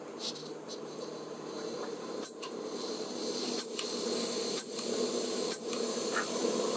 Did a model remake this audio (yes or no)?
yes